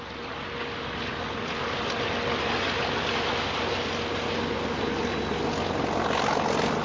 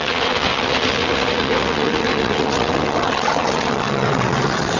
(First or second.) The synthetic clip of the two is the second